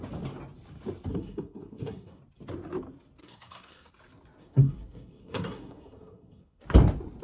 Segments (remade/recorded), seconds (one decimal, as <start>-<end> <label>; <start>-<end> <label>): 0.0-1.1 recorded; 1.1-2.2 remade; 2.2-3.2 recorded; 3.2-3.9 remade; 3.9-4.4 recorded; 4.4-6.6 remade; 6.6-7.2 recorded